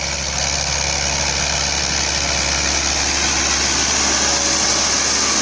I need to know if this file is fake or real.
real